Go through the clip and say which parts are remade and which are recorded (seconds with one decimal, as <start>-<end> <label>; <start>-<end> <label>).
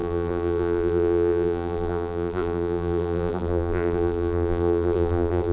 0.0-5.5 remade